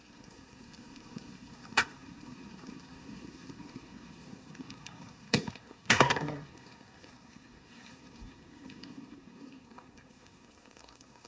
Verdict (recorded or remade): remade